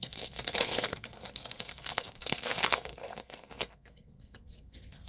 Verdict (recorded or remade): remade